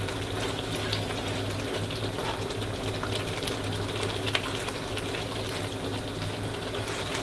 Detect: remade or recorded recorded